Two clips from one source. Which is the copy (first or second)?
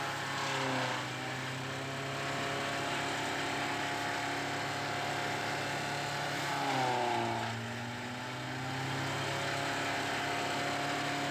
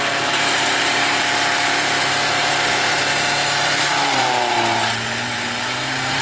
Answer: second